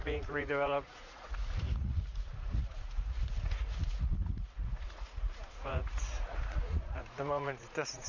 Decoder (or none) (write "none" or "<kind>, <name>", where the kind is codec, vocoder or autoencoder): vocoder, Vocos